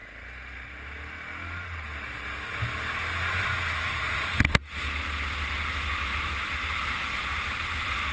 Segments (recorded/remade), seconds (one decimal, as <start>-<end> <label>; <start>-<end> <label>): 0.0-8.1 recorded